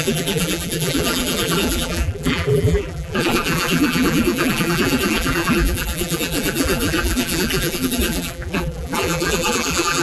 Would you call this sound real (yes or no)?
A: no